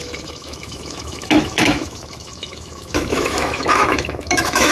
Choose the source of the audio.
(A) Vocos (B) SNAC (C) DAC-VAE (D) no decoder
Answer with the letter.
C